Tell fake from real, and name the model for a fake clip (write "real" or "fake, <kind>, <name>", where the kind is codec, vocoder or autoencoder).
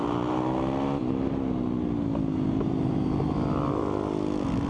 real